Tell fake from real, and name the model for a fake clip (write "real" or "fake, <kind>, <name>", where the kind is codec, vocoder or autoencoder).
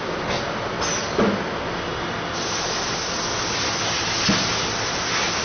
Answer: real